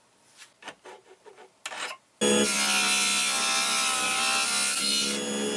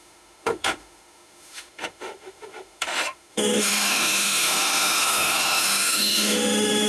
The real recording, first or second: first